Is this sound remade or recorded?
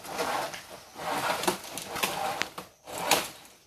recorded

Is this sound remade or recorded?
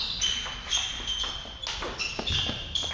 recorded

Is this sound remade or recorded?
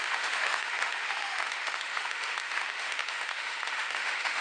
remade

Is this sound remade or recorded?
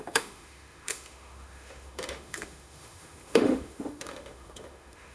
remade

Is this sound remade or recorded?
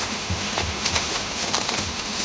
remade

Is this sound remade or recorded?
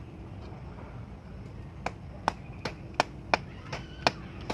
recorded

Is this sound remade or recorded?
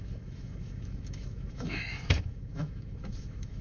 remade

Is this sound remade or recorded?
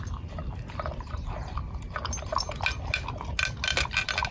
recorded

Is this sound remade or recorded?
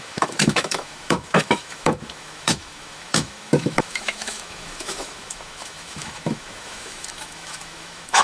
remade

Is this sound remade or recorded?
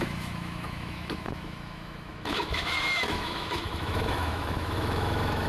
remade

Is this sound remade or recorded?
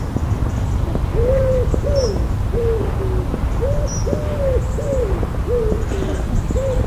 recorded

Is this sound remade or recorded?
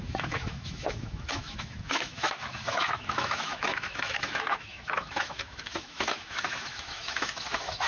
remade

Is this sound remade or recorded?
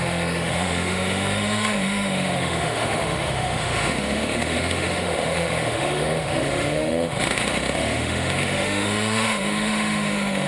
remade